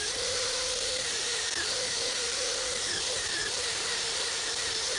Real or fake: fake